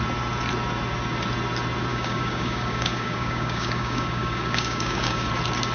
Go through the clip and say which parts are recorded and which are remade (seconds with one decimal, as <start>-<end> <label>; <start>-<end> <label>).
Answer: 0.0-1.9 recorded; 1.9-5.3 remade; 5.3-5.7 recorded